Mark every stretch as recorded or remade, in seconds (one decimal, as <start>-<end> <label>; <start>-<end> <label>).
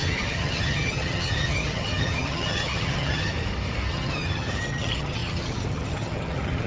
0.0-3.3 remade; 3.3-3.9 recorded; 3.9-6.7 remade